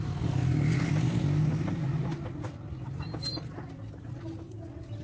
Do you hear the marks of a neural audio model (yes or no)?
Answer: no